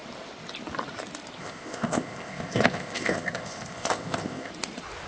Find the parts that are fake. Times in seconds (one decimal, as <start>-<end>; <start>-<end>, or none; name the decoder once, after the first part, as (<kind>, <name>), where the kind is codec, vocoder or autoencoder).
1.4-4.5 (codec, ZipCodec)